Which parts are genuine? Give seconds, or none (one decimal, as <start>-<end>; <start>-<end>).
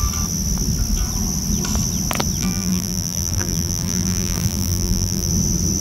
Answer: 0.0-2.4; 5.3-5.8